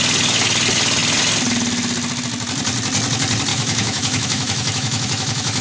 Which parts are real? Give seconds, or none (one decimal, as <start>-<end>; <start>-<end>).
0.0-3.5